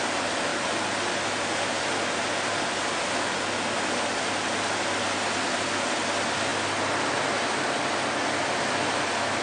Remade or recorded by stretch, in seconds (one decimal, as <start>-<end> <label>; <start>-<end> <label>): 0.0-9.4 recorded